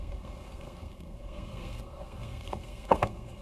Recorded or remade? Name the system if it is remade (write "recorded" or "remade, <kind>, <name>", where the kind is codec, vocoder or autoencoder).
remade, codec, SNAC